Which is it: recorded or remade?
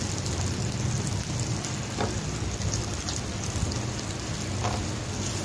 recorded